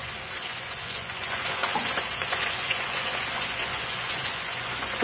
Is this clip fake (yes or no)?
yes